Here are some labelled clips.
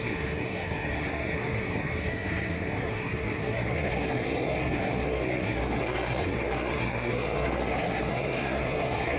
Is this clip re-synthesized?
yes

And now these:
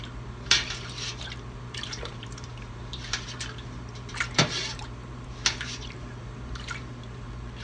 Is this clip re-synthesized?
yes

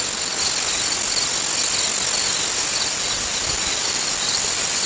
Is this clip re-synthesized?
no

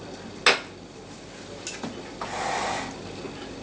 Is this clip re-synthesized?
no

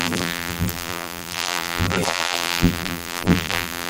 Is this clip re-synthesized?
yes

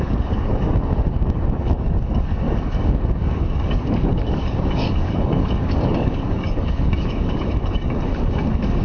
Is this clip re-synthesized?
yes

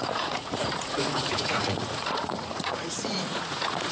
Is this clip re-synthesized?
yes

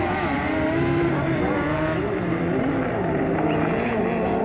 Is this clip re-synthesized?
yes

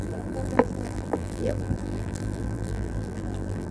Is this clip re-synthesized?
yes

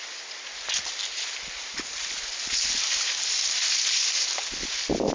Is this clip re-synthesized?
no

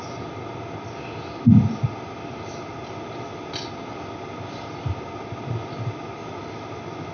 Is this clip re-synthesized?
no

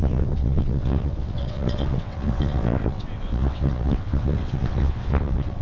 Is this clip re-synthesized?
yes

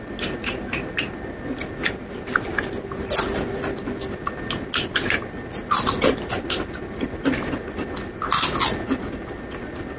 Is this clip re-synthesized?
no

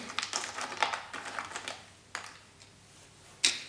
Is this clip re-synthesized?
no